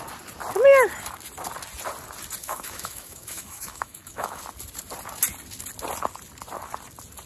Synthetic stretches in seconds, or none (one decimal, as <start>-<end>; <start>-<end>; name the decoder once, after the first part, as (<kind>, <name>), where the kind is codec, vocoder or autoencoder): 2.4-4.4 (autoencoder, DAC-VAE)